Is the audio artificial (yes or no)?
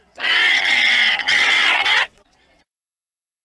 yes